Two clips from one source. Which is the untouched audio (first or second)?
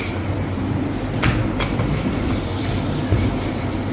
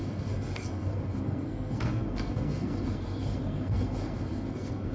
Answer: first